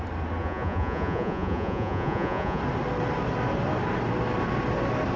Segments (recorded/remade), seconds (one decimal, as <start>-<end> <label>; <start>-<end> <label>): 0.0-0.4 recorded; 0.4-2.6 remade; 2.6-5.2 recorded